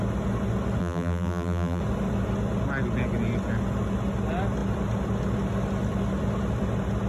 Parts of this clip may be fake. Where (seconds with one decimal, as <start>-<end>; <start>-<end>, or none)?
0.8-1.8